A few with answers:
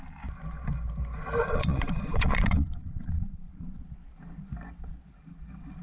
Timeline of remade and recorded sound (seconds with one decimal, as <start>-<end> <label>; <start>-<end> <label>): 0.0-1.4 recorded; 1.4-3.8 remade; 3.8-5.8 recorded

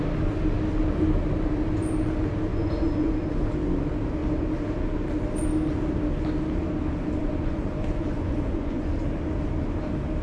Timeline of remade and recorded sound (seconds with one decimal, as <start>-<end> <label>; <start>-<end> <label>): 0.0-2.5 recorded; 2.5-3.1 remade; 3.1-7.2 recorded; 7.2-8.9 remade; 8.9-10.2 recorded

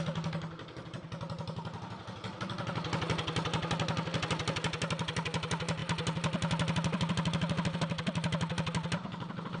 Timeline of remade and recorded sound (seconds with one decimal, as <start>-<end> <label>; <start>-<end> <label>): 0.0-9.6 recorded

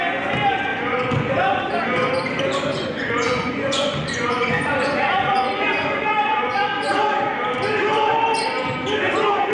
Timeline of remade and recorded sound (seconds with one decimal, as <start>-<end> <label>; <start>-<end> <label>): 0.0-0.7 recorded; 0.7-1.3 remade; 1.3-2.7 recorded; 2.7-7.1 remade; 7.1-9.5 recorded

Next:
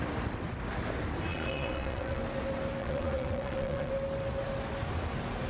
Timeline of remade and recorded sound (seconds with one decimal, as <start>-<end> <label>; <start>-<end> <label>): 0.0-1.3 recorded; 1.3-2.2 remade; 2.2-2.8 recorded; 2.8-3.9 remade; 3.9-5.5 recorded